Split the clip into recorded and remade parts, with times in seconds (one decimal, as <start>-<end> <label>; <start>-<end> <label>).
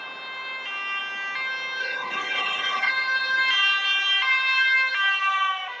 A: 0.0-1.8 recorded; 1.8-2.9 remade; 2.9-5.8 recorded